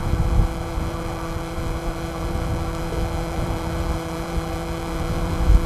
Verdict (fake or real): fake